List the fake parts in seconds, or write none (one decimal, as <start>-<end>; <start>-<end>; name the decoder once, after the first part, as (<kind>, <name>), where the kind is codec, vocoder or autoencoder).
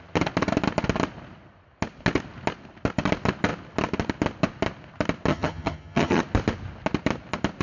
5.3-6.2 (vocoder, HiFi-GAN)